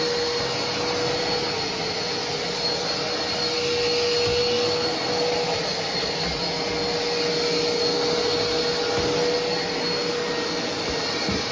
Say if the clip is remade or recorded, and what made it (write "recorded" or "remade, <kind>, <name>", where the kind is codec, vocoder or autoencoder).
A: recorded